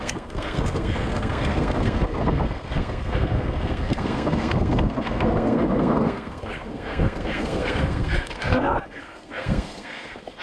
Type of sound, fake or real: fake